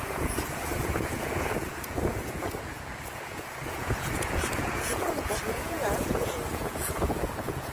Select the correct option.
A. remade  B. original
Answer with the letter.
A